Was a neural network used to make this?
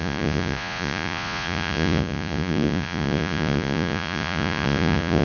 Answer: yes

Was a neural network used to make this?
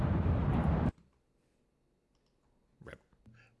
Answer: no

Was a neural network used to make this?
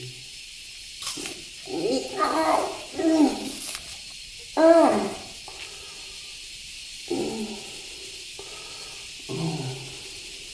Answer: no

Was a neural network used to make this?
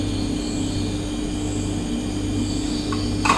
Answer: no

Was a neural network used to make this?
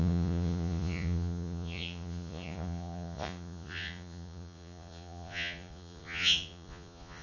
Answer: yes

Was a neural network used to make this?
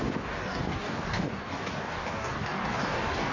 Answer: yes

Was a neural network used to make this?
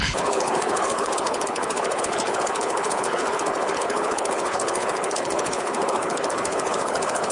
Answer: yes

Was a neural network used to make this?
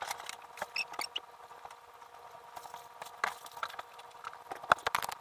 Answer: no